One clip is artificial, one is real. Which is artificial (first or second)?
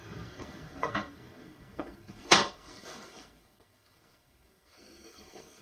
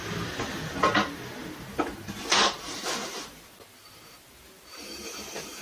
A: first